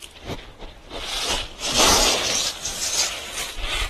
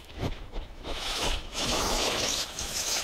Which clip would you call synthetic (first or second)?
second